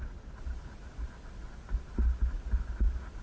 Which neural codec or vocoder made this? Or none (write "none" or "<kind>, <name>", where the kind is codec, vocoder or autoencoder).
none